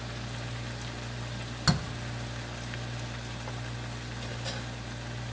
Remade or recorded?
recorded